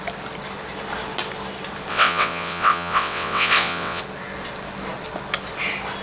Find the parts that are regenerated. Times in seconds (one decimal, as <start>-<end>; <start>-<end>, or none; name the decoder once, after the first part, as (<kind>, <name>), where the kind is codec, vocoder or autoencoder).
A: 1.9-4.0 (vocoder, WaveNeXt)